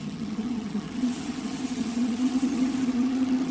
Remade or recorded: remade